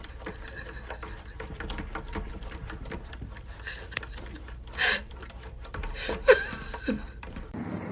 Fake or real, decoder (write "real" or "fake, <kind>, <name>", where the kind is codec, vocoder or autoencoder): fake, vocoder, BigVGAN v2